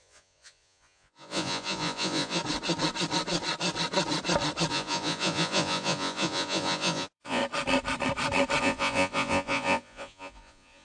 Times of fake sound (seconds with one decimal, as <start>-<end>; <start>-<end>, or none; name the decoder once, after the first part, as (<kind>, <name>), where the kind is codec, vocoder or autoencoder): 0.0-2.4 (vocoder, Vocos); 4.7-7.4; 8.6-10.8